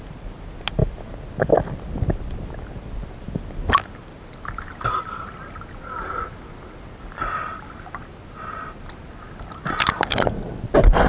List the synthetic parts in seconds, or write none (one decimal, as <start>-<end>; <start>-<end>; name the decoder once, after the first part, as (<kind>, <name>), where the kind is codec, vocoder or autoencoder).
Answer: none